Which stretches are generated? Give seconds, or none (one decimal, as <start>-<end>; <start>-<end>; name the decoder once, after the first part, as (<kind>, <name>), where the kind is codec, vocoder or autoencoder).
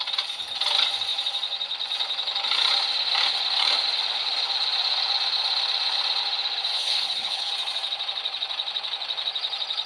6.7-7.5 (codec, HILCodec)